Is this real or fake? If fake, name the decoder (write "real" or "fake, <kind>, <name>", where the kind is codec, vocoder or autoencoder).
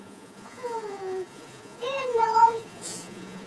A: fake, vocoder, Vocos